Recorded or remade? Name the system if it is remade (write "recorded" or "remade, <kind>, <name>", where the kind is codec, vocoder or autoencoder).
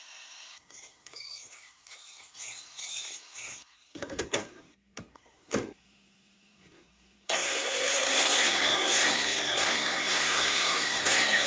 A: remade, codec, SNAC